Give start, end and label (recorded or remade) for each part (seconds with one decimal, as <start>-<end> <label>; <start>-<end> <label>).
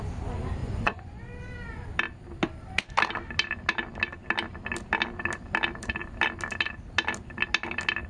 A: 0.0-0.6 recorded; 0.6-1.2 remade; 1.2-8.1 recorded